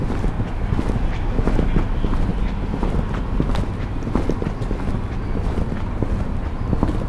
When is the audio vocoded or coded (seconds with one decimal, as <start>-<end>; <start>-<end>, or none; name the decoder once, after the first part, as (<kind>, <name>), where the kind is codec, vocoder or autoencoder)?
none